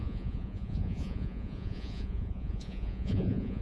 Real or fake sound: fake